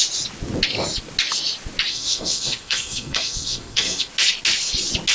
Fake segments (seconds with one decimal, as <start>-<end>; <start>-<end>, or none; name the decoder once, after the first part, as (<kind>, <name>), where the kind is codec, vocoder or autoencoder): 1.9-4.1 (codec, SNAC)